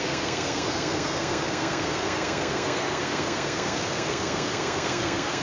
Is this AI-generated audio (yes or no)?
yes